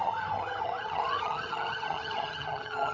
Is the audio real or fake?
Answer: fake